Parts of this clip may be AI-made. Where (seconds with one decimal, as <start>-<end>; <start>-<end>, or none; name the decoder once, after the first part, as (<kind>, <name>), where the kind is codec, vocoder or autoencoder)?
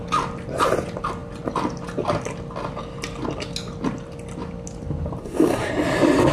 5.2-5.7 (codec, SNAC)